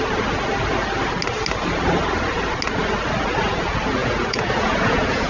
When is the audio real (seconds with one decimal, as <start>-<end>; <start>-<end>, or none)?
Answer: 0.0-4.0